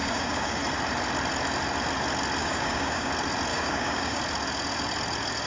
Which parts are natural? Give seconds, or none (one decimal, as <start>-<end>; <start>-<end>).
0.6-2.4; 3.1-3.5; 4.2-5.5